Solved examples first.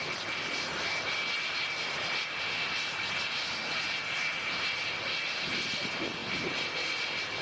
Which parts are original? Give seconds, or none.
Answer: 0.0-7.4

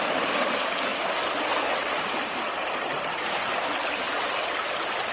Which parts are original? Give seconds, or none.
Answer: 0.0-5.1

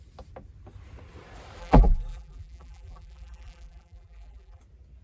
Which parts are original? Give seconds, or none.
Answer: 0.0-1.6; 4.6-5.0

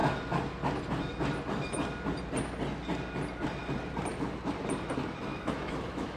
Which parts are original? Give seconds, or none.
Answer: 0.0-5.3

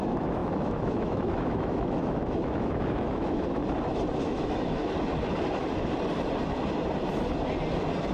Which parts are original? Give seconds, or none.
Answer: 3.6-4.2; 4.8-8.1

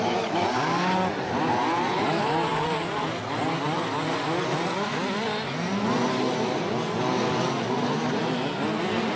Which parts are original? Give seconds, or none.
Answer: 0.0-9.2